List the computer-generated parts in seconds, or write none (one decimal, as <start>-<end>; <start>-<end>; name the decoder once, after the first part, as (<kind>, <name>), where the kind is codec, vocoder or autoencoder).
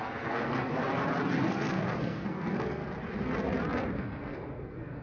0.0-0.7 (codec, SNAC); 1.5-2.8; 3.9-5.0